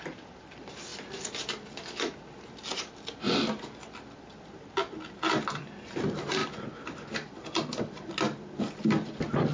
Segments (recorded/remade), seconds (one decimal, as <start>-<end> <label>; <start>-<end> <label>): 0.0-9.5 recorded